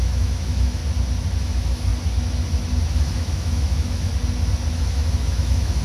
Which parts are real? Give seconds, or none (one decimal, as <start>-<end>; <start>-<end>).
0.8-1.4; 1.9-2.9; 4.1-4.7